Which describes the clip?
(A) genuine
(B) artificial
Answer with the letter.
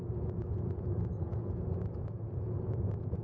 B